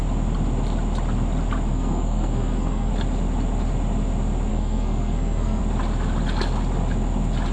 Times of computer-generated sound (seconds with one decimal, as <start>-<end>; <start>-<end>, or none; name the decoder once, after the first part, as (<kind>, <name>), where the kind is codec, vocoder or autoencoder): 1.7-2.9 (codec, SNAC); 4.5-5.6